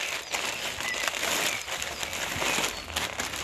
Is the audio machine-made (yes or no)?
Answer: no